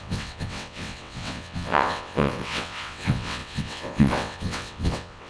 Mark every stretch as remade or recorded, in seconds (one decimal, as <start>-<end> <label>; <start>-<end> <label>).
0.0-5.3 remade